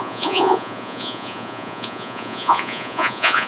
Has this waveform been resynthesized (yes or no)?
yes